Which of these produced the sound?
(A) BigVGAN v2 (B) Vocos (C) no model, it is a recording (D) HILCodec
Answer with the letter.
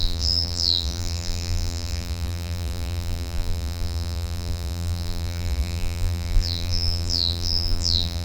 A